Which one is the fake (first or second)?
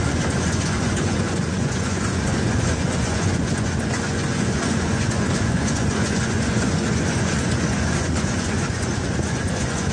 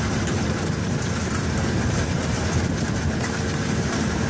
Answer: first